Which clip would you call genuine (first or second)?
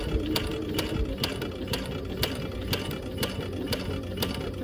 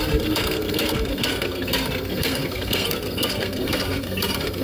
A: first